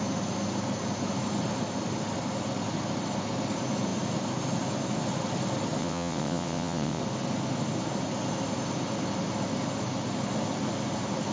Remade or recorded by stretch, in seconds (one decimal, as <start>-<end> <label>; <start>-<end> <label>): 0.0-5.8 recorded; 5.8-7.0 remade; 7.0-11.3 recorded